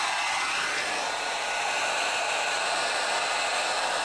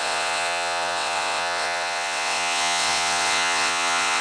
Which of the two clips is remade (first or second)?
second